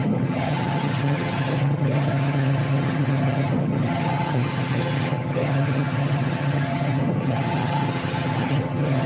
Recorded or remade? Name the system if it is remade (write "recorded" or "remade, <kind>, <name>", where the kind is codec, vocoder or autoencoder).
remade, vocoder, HiFi-GAN